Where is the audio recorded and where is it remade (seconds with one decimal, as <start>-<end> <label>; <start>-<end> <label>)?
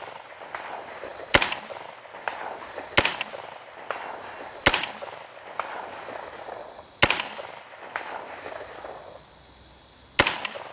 0.0-10.7 recorded